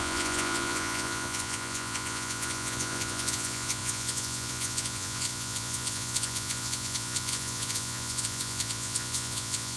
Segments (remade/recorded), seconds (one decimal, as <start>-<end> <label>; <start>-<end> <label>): 0.0-9.8 remade